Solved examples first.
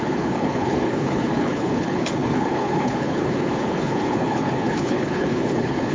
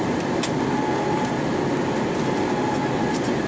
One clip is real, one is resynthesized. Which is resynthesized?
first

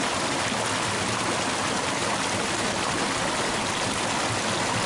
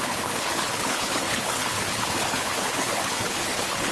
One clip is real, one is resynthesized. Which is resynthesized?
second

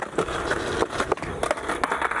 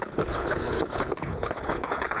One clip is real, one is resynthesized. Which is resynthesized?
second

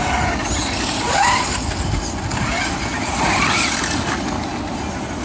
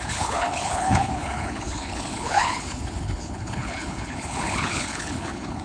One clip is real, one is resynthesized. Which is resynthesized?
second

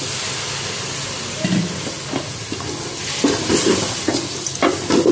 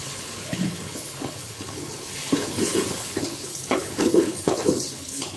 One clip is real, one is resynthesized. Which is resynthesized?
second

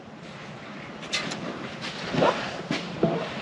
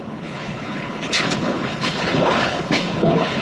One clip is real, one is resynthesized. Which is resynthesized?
second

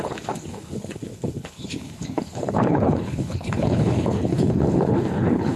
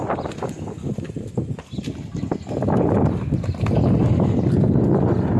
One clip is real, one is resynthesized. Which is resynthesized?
first